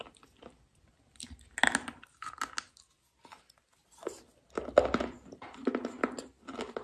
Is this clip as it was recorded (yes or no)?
yes